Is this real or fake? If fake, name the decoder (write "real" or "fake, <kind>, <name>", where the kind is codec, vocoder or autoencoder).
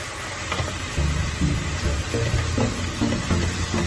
real